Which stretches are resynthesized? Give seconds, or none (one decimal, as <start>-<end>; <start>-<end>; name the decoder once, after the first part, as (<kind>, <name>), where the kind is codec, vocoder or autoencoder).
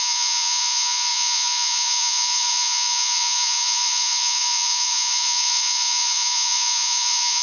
0.0-7.4 (vocoder, Vocos)